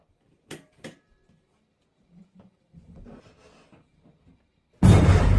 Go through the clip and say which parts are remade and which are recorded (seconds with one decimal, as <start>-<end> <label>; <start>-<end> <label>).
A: 0.0-3.9 remade; 3.9-5.0 recorded; 5.0-5.4 remade